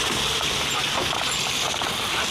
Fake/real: real